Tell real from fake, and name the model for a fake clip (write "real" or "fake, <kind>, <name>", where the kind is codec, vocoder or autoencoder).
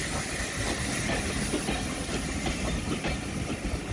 real